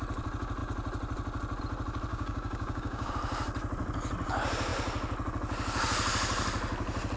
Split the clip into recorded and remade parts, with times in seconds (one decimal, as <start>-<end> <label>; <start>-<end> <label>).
0.0-2.1 recorded; 2.1-3.1 remade; 3.1-7.2 recorded